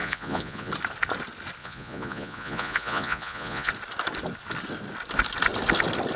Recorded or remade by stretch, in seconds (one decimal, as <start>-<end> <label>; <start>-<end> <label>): 0.0-0.7 remade; 0.7-1.6 recorded; 1.6-3.7 remade; 3.7-6.2 recorded